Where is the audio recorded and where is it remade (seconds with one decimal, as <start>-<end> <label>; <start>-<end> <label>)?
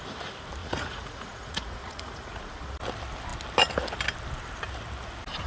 0.0-0.6 recorded; 0.6-2.4 remade; 2.4-5.5 recorded